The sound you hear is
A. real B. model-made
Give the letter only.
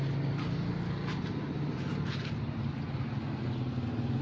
A